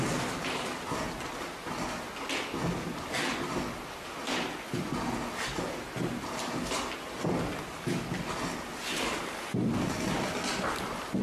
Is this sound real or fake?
real